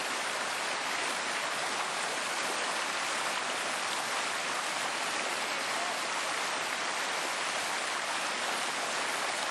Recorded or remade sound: recorded